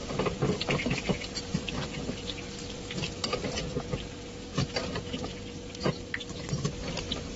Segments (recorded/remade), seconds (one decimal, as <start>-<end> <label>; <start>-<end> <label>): 0.0-7.4 recorded